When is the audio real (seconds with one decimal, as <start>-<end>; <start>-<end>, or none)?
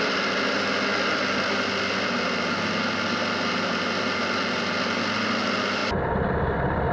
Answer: 0.0-6.9